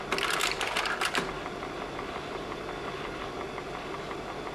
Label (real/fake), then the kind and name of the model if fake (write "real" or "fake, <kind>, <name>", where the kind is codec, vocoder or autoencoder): real